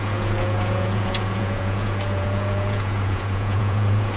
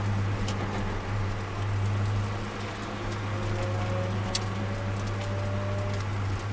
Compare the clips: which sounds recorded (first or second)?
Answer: second